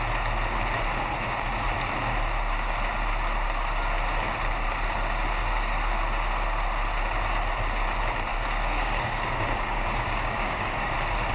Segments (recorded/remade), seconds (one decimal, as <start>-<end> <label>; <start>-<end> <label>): 0.0-5.4 recorded; 5.4-6.0 remade; 6.0-8.3 recorded; 8.3-10.9 remade; 10.9-11.3 recorded